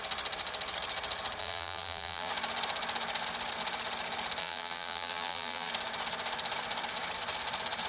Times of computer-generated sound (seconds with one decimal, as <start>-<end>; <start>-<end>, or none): 1.4-2.3; 4.4-5.7

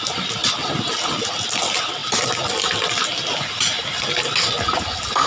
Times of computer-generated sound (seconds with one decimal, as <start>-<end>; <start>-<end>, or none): 2.0-2.9

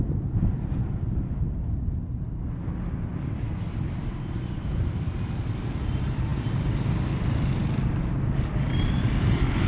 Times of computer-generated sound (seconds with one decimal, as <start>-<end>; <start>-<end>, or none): none

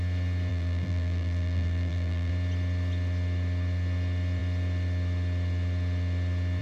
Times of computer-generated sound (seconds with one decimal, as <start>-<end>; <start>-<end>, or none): 0.5-2.3

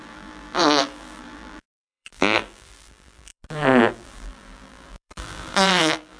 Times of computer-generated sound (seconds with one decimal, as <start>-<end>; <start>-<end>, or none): 0.0-6.2

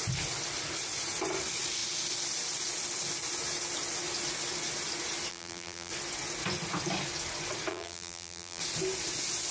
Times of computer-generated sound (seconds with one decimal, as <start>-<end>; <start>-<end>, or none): 5.3-5.9; 7.7-8.6

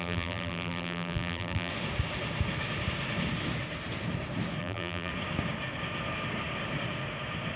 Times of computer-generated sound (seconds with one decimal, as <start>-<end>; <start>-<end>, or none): 0.0-1.7; 4.6-5.1